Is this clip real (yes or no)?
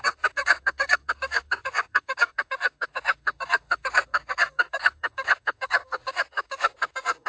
no